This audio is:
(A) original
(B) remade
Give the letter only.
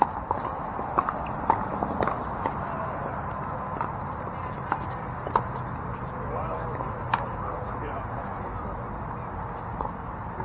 A